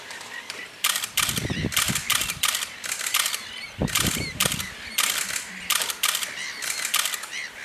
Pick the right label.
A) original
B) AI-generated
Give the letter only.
B